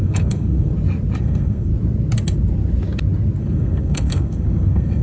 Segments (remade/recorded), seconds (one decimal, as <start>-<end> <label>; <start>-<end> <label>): 0.0-0.7 remade; 0.7-1.2 recorded; 1.2-1.7 remade; 1.7-3.4 recorded; 3.4-5.0 remade